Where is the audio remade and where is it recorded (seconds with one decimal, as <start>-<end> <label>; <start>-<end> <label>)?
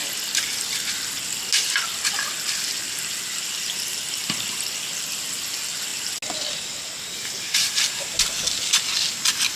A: 0.0-9.6 recorded